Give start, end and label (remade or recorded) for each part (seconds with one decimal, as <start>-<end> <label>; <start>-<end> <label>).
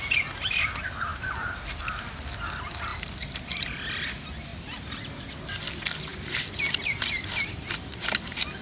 0.0-2.9 recorded; 2.9-3.7 remade; 3.7-4.5 recorded; 4.5-5.2 remade; 5.2-8.6 recorded